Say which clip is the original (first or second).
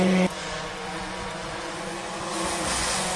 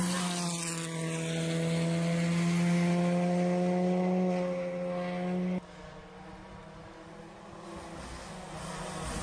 second